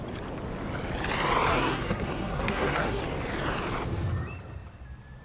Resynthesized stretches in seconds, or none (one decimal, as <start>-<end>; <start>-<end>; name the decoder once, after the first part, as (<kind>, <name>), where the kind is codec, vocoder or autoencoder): 1.5-3.0 (codec, SNAC)

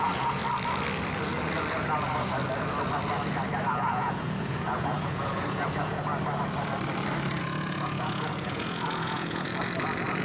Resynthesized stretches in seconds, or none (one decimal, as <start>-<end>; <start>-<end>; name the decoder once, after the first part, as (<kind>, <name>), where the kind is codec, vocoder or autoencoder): 0.0-0.4 (vocoder, Vocos); 3.7-6.1; 7.4-9.5

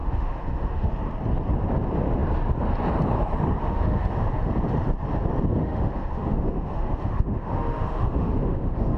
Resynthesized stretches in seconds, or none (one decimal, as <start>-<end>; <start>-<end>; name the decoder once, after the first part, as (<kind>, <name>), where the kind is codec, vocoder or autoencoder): 0.0-0.9 (autoencoder, DAC-VAE); 3.6-4.5; 5.6-9.0

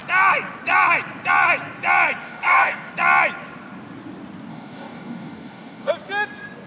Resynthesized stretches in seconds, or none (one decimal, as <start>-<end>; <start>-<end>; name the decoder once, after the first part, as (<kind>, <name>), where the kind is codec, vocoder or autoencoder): 2.2-2.9 (codec, DAC); 4.5-5.9

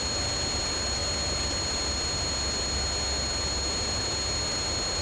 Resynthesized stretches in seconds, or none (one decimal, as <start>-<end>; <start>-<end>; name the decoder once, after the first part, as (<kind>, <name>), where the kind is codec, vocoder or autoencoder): none

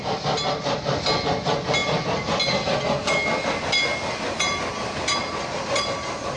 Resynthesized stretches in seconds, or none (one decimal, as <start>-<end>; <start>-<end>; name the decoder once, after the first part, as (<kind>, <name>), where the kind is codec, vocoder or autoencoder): none

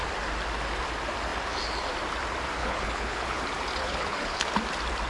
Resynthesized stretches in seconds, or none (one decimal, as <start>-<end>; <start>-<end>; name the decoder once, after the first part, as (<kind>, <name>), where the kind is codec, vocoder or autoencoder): 2.6-3.4 (codec, HILCodec); 3.8-4.4

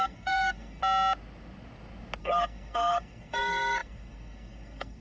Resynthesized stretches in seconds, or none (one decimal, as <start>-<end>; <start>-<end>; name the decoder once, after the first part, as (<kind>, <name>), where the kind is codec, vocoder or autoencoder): 0.0-0.8 (codec, SNAC); 2.2-5.0